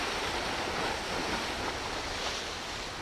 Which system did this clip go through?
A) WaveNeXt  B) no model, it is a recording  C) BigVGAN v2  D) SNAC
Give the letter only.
B